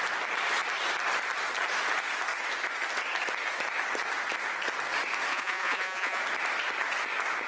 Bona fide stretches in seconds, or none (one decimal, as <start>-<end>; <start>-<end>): 0.0-5.3; 6.2-7.5